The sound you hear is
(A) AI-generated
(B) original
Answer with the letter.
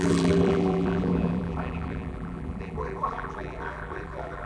A